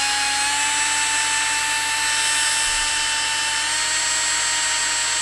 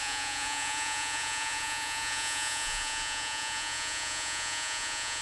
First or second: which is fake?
second